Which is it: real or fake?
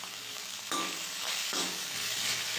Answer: fake